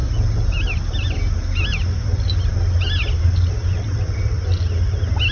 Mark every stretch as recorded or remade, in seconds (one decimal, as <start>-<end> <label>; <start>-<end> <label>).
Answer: 0.0-5.3 recorded

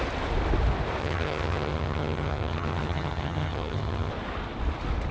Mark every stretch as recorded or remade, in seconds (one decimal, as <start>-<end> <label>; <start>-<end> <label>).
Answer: 0.0-1.0 recorded; 1.0-4.1 remade; 4.1-5.1 recorded

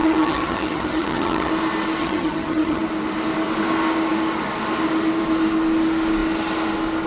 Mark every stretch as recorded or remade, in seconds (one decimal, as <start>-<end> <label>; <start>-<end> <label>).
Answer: 0.0-1.5 remade; 1.5-2.0 recorded; 2.0-2.8 remade; 2.8-7.1 recorded